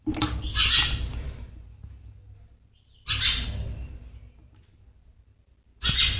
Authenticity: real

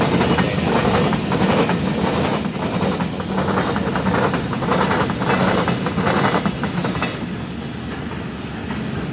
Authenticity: real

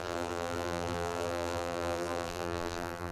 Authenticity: fake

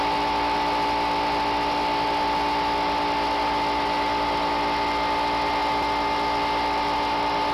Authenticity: real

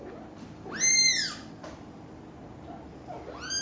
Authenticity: real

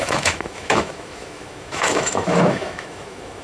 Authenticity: fake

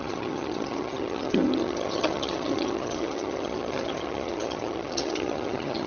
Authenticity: fake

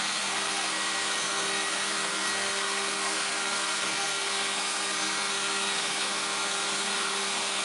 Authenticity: fake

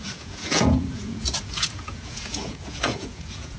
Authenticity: fake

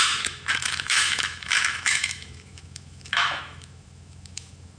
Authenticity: fake